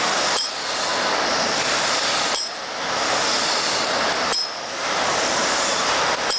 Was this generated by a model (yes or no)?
yes